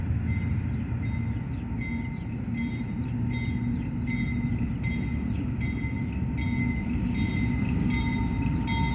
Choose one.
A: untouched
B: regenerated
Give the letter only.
A